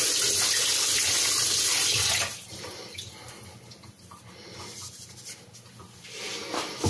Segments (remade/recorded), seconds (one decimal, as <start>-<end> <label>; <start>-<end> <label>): 0.0-6.9 recorded